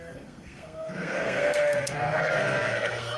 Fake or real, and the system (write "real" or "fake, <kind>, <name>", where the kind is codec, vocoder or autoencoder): fake, codec, SNAC